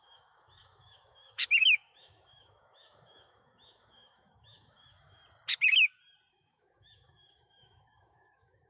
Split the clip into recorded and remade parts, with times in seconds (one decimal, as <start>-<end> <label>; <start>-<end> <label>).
0.0-5.2 remade; 5.2-6.3 recorded; 6.3-8.7 remade